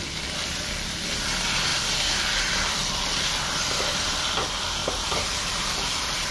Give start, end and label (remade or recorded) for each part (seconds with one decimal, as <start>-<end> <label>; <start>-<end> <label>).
0.0-4.8 recorded; 4.8-6.3 remade